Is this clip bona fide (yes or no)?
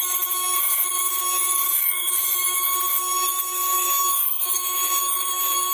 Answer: no